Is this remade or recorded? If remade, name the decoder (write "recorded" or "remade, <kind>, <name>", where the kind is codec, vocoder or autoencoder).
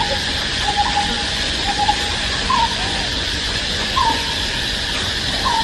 remade, vocoder, Vocos